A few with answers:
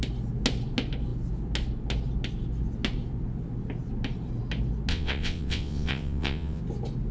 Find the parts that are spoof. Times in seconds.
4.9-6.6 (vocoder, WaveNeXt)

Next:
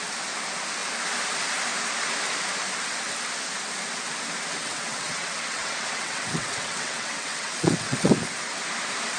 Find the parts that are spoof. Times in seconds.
4.5-8.1 (vocoder, WaveNeXt)

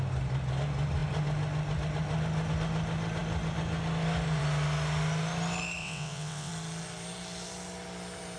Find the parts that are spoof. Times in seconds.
5.8-6.5 (vocoder, WaveNeXt)

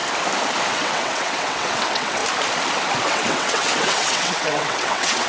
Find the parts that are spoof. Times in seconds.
0.7-2.2 (vocoder, WaveNeXt); 3.0-5.3

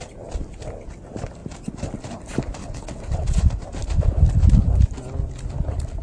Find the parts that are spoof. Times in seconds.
2.6-3.4 (vocoder, WaveNeXt)